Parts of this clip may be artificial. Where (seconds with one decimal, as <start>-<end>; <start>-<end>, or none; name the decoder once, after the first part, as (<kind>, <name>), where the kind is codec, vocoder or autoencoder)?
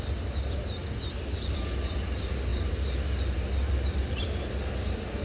2.5-4.2 (vocoder, BigVGAN v2)